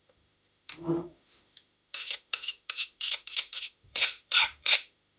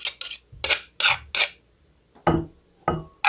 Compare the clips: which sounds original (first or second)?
second